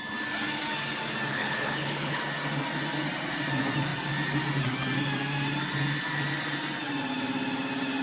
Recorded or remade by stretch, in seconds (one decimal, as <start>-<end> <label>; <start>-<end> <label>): 0.0-1.3 recorded; 1.3-2.2 remade; 2.2-8.0 recorded